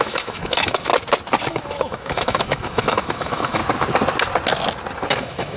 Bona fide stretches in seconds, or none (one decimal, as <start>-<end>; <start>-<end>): 0.9-1.5; 3.6-5.1